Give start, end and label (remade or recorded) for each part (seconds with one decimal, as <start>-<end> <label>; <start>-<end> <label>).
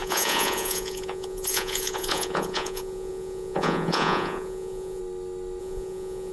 0.0-5.0 remade; 5.0-5.6 recorded; 5.6-6.3 remade